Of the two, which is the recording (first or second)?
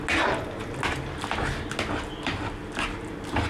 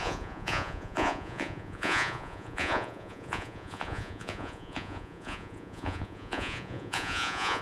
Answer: first